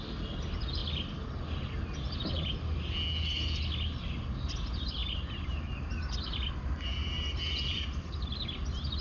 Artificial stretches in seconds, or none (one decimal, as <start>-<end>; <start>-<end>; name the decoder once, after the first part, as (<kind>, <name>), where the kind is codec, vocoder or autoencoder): none